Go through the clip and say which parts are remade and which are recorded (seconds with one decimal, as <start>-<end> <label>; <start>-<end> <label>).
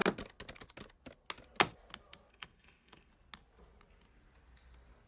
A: 0.0-2.3 recorded; 2.3-3.1 remade; 3.1-5.1 recorded